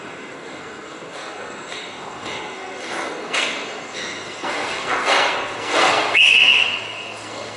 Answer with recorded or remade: remade